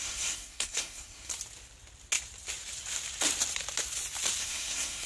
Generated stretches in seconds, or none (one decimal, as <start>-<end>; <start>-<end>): 0.0-1.3; 4.4-5.1